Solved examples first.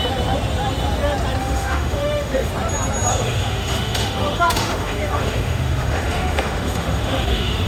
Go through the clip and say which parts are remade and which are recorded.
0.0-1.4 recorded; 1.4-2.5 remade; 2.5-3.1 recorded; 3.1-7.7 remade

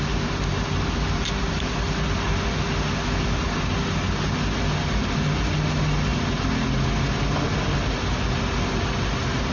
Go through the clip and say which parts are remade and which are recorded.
0.0-9.5 recorded

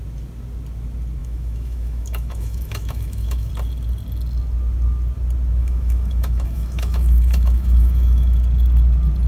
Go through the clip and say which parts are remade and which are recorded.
0.0-1.2 recorded; 1.2-3.5 remade; 3.5-5.6 recorded; 5.6-8.4 remade; 8.4-9.3 recorded

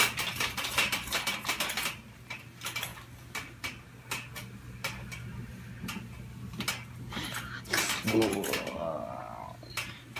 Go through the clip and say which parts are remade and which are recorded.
0.0-10.2 recorded

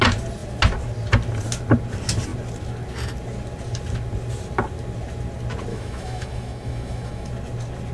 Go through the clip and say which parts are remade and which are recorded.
0.0-5.7 recorded; 5.7-7.3 remade; 7.3-7.9 recorded

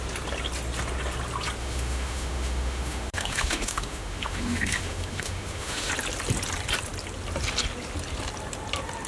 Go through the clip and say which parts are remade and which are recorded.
0.0-1.6 recorded; 1.6-5.9 remade; 5.9-9.1 recorded

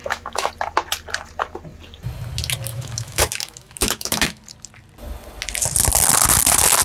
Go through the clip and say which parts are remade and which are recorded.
0.0-0.5 remade; 0.5-2.7 recorded; 2.7-4.4 remade; 4.4-6.8 recorded

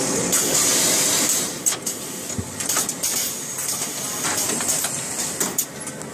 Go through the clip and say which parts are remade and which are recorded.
0.0-6.1 recorded